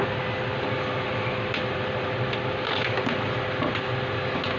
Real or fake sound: real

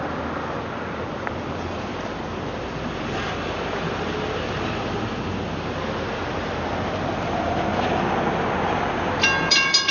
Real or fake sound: real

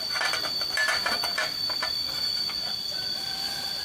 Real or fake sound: fake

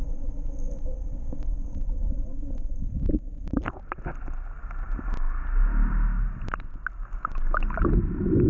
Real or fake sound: real